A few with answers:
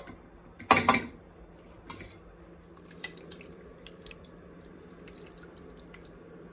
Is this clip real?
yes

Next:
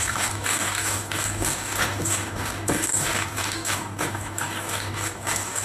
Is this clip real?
no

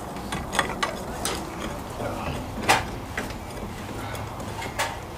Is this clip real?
yes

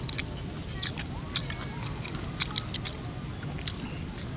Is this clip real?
yes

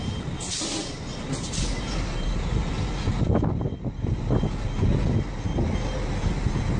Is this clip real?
yes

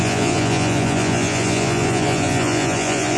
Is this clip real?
no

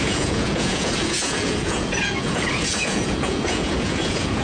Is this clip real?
no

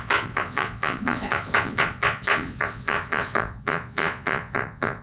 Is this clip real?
no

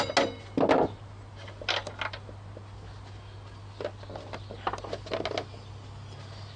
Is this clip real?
yes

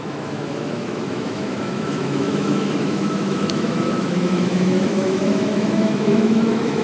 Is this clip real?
no